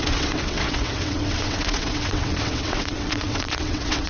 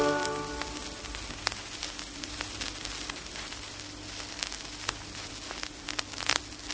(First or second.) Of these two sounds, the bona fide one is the second